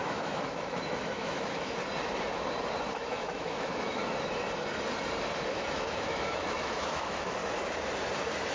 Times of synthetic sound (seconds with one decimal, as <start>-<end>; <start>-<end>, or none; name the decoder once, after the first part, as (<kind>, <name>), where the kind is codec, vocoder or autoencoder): 0.0-1.8 (autoencoder, DAC-VAE); 2.9-4.0; 5.5-7.4